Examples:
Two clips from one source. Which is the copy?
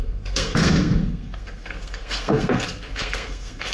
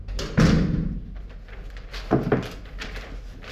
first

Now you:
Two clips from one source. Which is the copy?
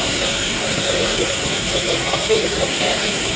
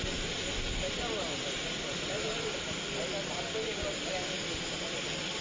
first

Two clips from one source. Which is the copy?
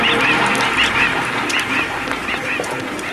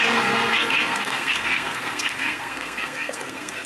second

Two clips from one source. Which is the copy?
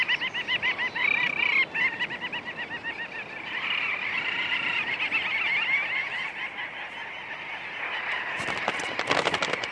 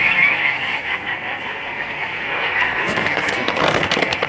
second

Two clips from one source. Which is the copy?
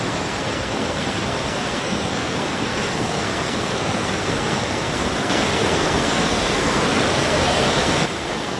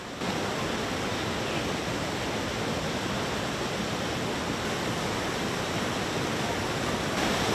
first